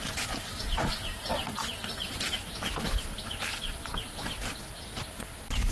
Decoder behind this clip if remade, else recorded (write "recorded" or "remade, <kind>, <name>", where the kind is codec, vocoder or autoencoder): recorded